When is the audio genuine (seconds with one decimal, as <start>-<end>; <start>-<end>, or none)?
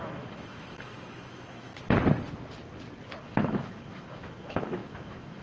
1.7-3.2